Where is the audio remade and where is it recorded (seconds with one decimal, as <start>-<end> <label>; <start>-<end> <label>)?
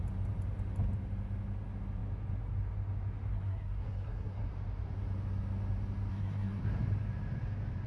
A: 0.0-3.3 recorded; 3.3-4.5 remade; 4.5-6.1 recorded; 6.1-6.6 remade; 6.6-7.9 recorded